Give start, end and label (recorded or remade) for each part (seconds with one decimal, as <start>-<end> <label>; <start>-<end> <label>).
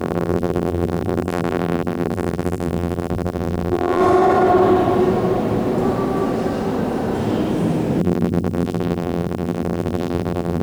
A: 0.0-4.0 remade; 4.0-8.0 recorded; 8.0-10.6 remade